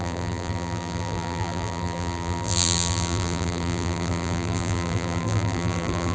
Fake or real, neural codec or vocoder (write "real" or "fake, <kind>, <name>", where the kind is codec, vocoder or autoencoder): fake, vocoder, BigVGAN v2